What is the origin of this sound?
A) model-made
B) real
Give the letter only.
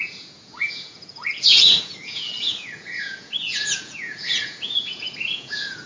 A